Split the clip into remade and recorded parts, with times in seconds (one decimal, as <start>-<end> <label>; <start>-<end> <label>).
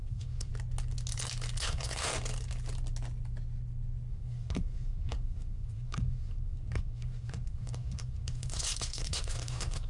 0.0-0.5 remade; 0.5-1.6 recorded; 1.6-2.1 remade; 2.1-4.1 recorded; 4.1-9.9 remade